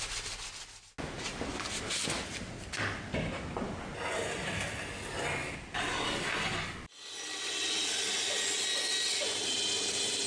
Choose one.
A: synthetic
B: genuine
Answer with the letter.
B